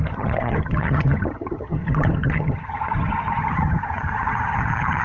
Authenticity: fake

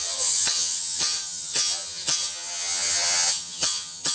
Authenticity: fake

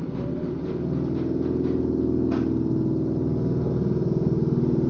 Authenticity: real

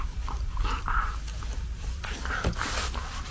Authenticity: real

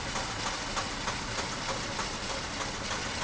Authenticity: real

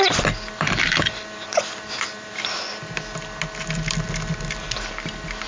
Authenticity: real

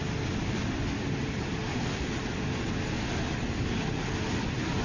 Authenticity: real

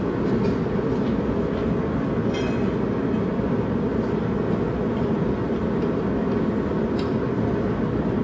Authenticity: real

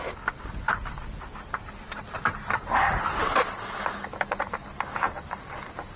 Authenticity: real